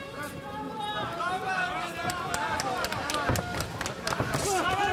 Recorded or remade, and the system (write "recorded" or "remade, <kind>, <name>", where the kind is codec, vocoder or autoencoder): recorded